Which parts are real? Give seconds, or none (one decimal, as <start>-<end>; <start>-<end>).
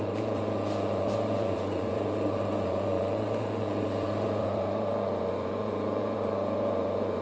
none